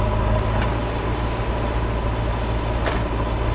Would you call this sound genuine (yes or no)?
yes